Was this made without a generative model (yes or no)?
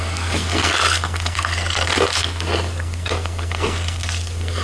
no